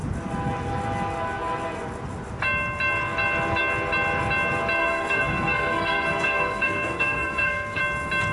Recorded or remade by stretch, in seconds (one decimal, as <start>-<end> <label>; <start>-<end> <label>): 0.0-4.8 recorded; 4.8-7.8 remade; 7.8-8.3 recorded